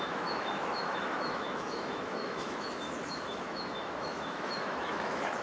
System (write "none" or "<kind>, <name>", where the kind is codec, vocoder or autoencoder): autoencoder, DAC-VAE